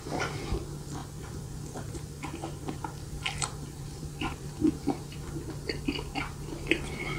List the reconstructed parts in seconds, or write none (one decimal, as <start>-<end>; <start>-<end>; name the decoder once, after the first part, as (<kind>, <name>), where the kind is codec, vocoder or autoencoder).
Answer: 1.0-5.3 (vocoder, BigVGAN v2)